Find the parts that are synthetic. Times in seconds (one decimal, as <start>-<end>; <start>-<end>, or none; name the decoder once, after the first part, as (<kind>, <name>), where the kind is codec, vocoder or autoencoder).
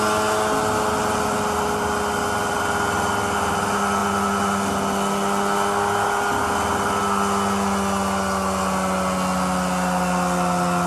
none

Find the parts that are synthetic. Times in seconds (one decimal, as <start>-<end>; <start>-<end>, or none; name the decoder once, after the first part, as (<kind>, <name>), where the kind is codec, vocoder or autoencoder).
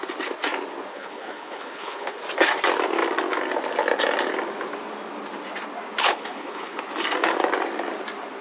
0.9-2.2 (codec, HILCodec); 6.0-6.8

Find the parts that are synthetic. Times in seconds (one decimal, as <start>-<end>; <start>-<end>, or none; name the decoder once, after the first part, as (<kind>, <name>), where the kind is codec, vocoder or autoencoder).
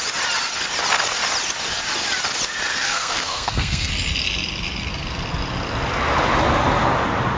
2.7-3.9 (codec, SNAC)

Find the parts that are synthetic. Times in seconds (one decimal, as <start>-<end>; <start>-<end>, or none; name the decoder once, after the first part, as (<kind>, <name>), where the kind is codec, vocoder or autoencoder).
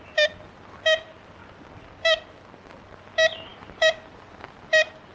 3.5-5.1 (vocoder, BigVGAN v2)